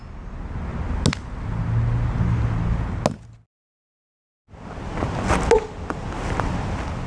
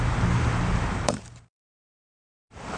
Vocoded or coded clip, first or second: second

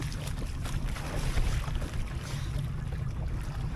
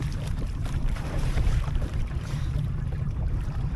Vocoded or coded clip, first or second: second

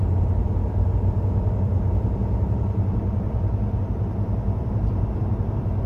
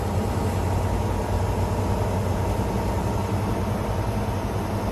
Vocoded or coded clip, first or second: first